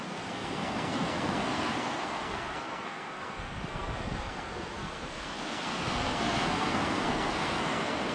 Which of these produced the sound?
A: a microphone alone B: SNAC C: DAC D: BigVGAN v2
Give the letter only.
B